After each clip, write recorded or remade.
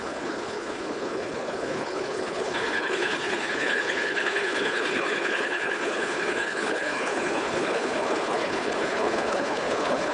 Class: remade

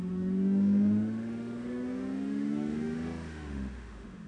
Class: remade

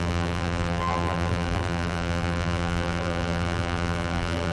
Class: remade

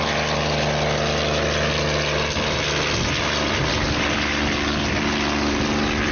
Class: recorded